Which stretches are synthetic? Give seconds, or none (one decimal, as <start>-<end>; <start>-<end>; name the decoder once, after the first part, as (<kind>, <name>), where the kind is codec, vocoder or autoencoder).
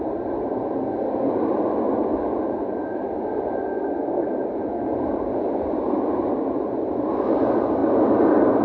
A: none